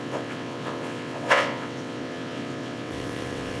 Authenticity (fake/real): fake